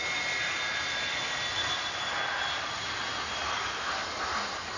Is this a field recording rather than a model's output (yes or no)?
yes